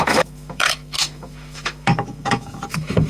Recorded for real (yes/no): no